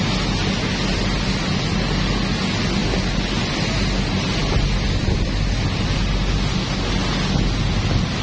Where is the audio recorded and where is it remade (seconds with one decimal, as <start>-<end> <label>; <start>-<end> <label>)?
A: 0.0-8.2 recorded